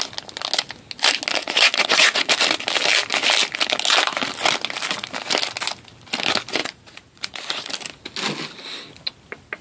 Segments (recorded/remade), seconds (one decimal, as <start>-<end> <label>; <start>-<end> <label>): 0.0-1.4 recorded; 1.4-2.3 remade; 2.3-6.6 recorded; 6.6-7.7 remade; 7.7-9.6 recorded